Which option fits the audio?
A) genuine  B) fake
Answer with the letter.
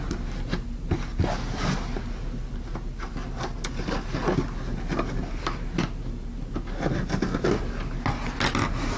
A